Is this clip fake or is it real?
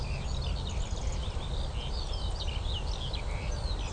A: real